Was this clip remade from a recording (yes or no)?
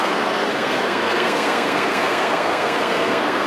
yes